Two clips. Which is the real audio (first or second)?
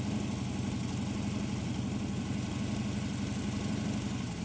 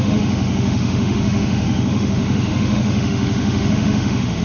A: first